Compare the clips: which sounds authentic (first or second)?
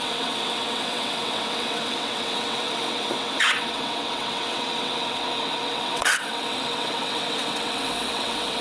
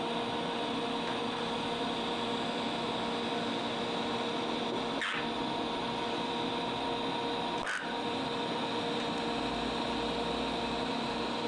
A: second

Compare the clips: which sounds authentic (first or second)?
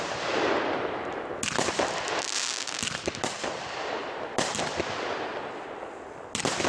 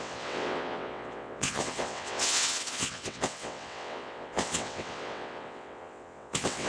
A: first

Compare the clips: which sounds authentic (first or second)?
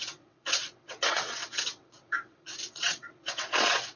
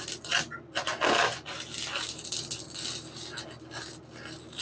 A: second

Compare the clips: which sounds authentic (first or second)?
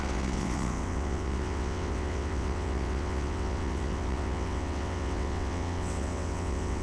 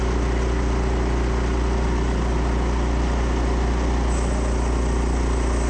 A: second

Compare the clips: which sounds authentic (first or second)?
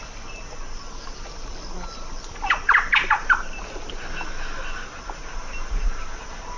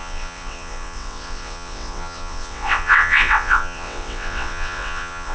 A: first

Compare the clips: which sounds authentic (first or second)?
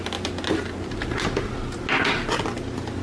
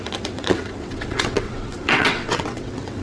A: first